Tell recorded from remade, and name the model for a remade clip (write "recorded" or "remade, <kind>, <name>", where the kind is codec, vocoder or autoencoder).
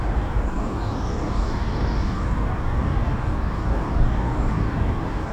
remade, codec, DAC